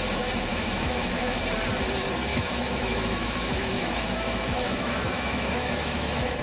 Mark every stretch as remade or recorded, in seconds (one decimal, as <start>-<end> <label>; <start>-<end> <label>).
0.0-0.5 recorded; 0.5-1.4 remade; 1.4-2.3 recorded; 2.3-6.4 remade